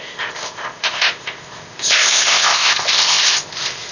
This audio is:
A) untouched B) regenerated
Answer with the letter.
B